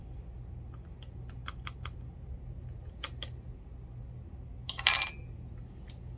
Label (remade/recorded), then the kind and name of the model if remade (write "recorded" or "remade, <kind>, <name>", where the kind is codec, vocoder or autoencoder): recorded